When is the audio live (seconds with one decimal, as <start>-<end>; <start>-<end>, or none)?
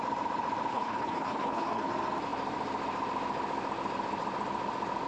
0.0-0.7; 1.9-5.1